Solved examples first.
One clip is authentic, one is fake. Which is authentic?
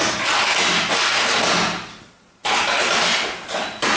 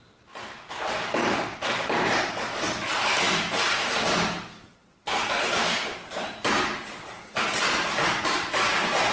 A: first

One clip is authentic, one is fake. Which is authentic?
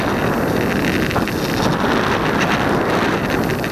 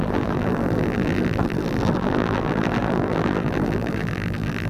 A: first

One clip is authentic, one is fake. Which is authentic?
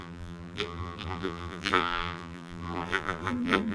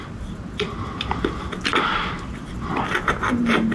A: second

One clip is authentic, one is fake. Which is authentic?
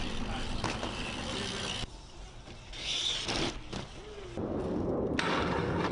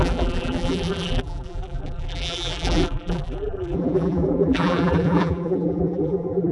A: first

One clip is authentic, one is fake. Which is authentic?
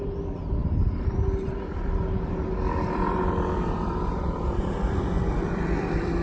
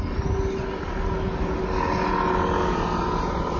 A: second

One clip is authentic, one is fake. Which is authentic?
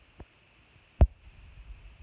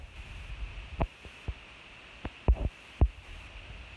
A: second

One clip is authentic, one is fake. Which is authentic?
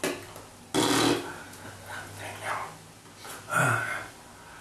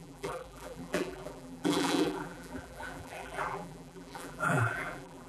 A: first